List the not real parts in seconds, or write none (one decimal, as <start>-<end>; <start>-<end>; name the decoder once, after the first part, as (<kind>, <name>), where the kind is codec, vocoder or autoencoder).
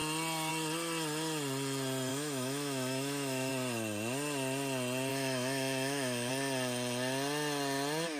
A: 2.1-3.5 (autoencoder, DAC-VAE); 5.1-6.3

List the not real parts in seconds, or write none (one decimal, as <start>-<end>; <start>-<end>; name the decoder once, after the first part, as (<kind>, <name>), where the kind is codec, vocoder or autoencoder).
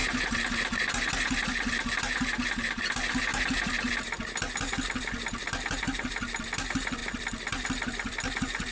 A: none